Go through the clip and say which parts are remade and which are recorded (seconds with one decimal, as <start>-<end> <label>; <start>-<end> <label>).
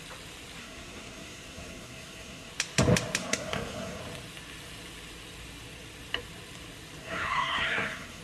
0.0-0.6 recorded; 0.6-2.5 remade; 2.5-3.2 recorded; 3.2-4.0 remade; 4.0-7.0 recorded; 7.0-8.2 remade